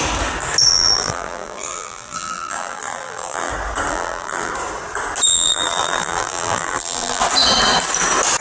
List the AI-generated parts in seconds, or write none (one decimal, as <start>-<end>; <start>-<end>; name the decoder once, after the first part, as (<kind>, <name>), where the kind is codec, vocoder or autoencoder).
0.7-3.5 (vocoder, BigVGAN v2); 3.9-4.5; 5.3-7.2